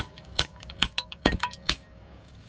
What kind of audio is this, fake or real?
fake